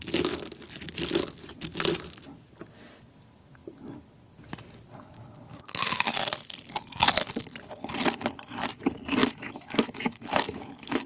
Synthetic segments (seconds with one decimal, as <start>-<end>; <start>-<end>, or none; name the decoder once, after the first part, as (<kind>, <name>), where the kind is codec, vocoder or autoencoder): 5.5-6.1 (autoencoder, DAC-VAE); 9.2-11.1